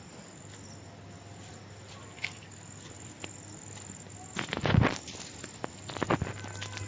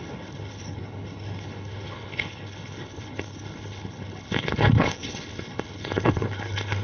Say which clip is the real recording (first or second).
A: first